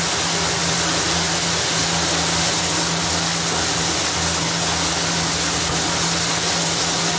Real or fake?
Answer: real